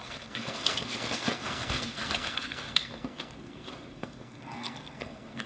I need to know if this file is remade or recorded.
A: remade